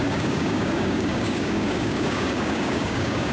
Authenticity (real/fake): fake